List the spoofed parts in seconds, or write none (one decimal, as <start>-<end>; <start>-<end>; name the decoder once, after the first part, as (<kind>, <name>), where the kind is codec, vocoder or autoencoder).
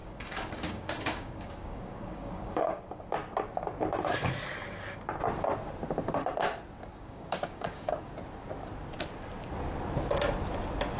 0.0-3.0 (codec, DAC); 6.9-8.1